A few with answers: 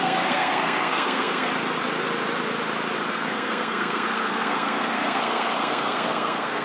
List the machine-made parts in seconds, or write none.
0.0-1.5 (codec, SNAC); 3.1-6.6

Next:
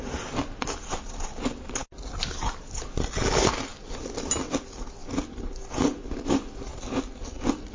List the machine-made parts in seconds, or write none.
none